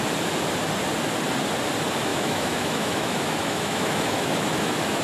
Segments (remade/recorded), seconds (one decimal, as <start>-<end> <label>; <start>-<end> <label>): 0.0-2.1 recorded; 2.1-5.0 remade